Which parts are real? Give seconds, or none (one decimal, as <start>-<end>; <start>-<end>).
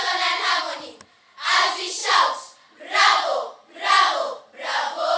0.0-5.2